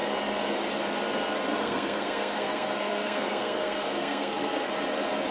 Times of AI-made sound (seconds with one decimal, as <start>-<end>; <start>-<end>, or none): 1.5-4.7